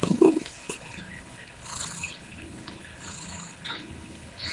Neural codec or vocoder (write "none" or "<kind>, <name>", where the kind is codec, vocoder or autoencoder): codec, HILCodec